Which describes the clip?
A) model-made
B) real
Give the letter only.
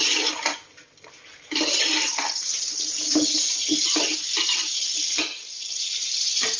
B